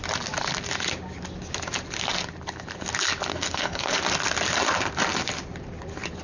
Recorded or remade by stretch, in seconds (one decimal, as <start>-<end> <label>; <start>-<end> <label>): 0.0-3.3 recorded; 3.3-4.0 remade; 4.0-6.2 recorded